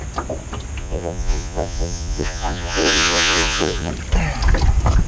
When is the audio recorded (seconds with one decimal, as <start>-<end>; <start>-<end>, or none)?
0.0-0.8; 3.9-5.1